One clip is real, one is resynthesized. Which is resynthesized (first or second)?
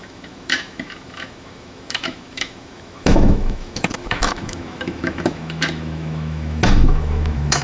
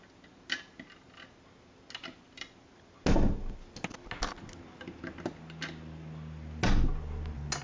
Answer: first